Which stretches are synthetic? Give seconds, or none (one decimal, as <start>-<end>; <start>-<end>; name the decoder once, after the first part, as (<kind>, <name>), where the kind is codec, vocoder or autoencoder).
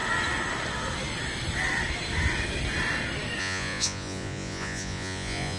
3.4-5.6 (vocoder, Vocos)